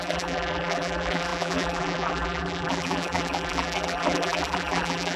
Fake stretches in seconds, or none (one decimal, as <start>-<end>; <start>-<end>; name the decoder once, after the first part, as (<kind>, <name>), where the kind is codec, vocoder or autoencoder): 0.0-5.2 (vocoder, BigVGAN v2)